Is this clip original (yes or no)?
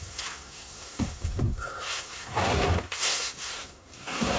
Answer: no